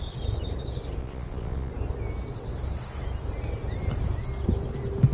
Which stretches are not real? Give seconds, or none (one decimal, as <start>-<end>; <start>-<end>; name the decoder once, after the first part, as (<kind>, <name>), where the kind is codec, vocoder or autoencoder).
1.0-1.7 (vocoder, Vocos)

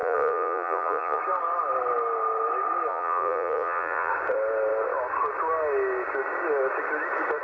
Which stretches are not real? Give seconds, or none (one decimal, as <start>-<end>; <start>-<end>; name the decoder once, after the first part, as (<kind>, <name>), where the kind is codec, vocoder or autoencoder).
0.0-1.2 (vocoder, Vocos); 2.9-4.1

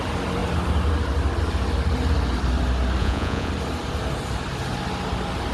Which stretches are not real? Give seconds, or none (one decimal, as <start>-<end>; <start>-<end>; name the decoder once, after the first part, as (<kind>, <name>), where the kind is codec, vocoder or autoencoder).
3.0-3.5 (vocoder, Vocos)

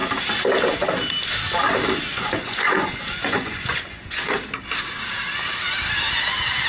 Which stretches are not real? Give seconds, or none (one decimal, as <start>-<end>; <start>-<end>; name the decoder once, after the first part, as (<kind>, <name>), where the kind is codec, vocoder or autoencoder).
2.1-4.4 (vocoder, Vocos)

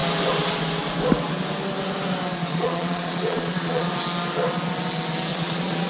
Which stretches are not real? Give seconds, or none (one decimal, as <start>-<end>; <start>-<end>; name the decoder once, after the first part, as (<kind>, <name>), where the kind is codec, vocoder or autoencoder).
2.5-3.9 (vocoder, Vocos); 5.3-5.9

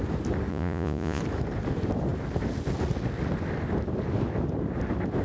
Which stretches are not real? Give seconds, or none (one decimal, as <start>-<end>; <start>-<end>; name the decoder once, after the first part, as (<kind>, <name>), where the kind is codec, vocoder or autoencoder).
0.5-1.2 (vocoder, Vocos)

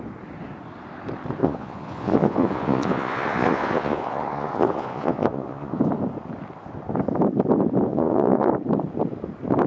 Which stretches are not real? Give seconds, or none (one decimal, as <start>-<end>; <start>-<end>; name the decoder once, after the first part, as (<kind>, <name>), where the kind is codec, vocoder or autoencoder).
1.4-5.8 (vocoder, Vocos); 7.9-8.5

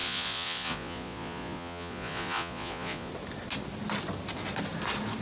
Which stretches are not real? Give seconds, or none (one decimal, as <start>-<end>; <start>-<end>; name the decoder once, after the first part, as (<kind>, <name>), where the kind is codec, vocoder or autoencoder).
0.0-3.1 (vocoder, Vocos)